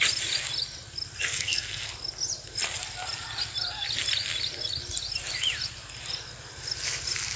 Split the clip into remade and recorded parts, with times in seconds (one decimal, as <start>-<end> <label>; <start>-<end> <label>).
0.0-1.3 recorded; 1.3-1.9 remade; 1.9-7.4 recorded